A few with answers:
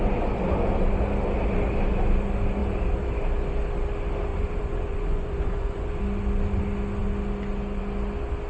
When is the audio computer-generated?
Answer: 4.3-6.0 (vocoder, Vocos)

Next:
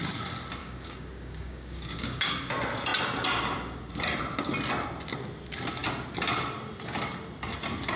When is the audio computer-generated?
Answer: 0.6-2.5 (codec, DAC)

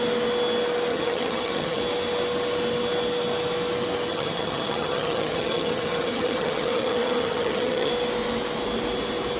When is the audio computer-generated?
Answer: 0.9-1.8 (vocoder, HiFi-GAN); 4.1-7.9

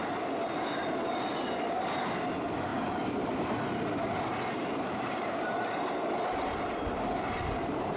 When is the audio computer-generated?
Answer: none